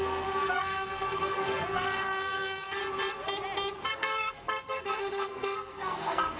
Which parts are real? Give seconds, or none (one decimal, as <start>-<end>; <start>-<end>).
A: 2.8-3.9